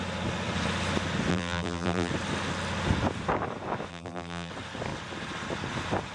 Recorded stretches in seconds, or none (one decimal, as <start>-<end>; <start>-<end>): 0.0-1.3; 2.1-3.9; 4.5-6.1